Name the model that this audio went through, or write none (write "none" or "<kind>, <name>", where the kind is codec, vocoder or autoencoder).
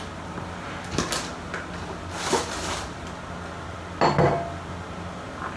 none